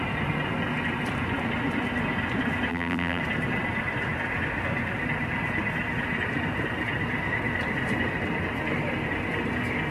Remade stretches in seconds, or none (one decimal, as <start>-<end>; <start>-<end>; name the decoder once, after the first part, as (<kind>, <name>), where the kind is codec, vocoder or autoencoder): 2.7-3.2 (vocoder, BigVGAN v2)